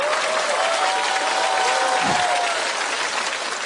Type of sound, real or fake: real